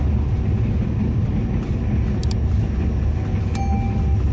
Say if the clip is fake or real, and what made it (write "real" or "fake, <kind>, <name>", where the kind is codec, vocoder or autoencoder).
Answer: real